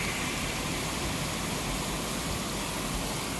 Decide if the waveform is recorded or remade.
recorded